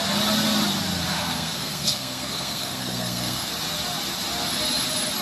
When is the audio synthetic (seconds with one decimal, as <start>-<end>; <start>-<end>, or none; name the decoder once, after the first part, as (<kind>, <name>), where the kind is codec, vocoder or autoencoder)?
1.1-3.5 (codec, SNAC)